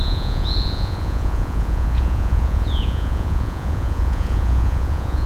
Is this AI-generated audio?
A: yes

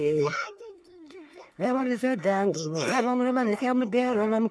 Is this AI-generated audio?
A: yes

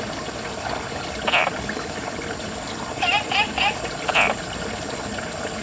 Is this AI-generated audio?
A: no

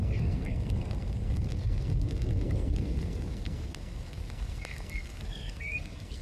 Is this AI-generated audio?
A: yes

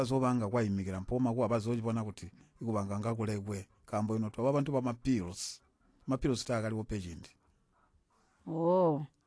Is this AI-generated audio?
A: no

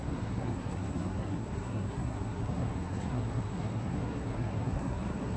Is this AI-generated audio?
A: yes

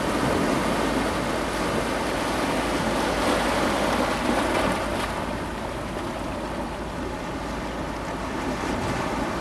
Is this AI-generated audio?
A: no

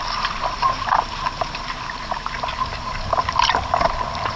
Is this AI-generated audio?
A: no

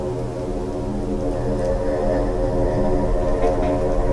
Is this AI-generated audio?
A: no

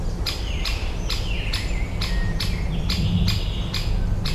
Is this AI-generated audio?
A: no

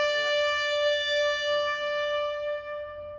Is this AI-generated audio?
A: yes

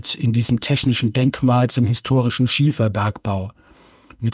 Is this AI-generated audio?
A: yes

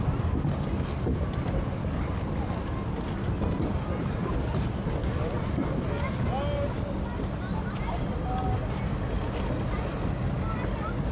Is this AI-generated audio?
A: no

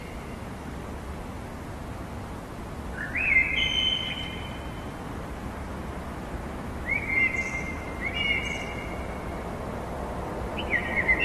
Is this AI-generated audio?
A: no